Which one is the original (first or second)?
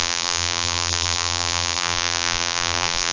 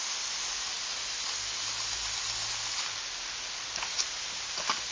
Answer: second